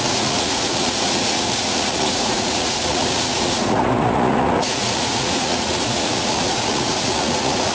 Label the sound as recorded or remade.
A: remade